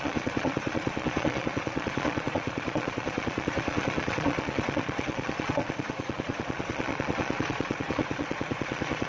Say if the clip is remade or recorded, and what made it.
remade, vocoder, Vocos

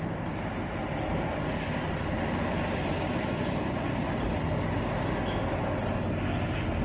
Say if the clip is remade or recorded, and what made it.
recorded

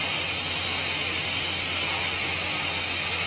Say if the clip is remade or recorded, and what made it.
recorded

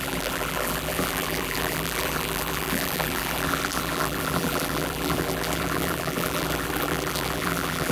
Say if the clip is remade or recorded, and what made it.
remade, vocoder, BigVGAN v2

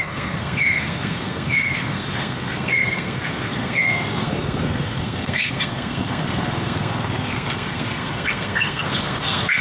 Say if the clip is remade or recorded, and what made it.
remade, codec, SNAC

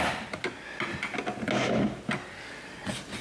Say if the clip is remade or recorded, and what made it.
recorded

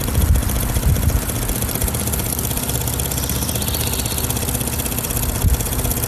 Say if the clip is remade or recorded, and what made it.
recorded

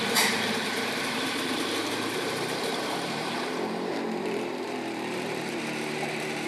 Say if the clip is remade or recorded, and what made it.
remade, vocoder, BigVGAN v2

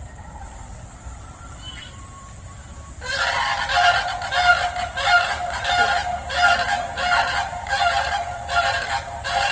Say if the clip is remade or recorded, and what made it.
remade, vocoder, BigVGAN v2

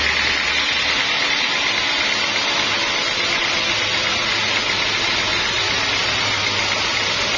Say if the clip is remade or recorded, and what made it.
recorded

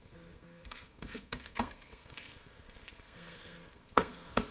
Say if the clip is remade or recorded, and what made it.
remade, codec, SNAC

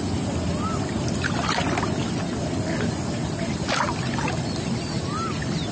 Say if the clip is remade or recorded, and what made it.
recorded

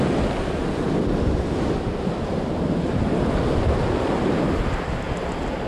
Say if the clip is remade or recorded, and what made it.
recorded